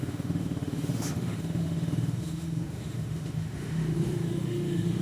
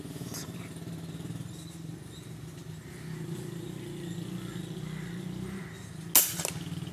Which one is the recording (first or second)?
second